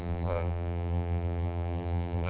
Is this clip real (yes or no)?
no